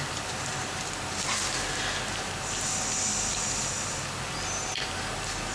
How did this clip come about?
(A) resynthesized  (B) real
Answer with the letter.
B